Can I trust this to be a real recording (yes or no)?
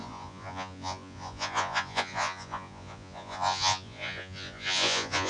no